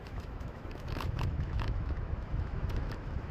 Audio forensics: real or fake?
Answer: fake